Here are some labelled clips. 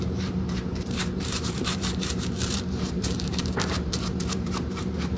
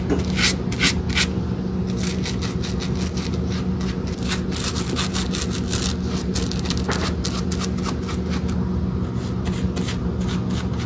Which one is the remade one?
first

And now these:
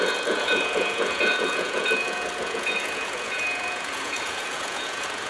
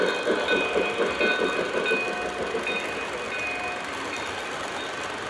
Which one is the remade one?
first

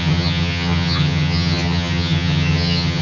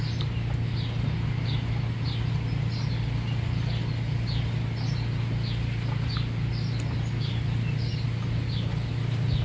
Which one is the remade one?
first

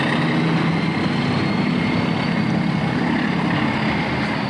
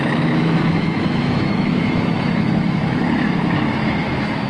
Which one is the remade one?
second